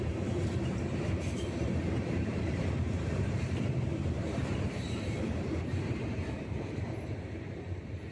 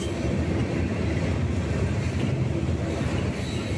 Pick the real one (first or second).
second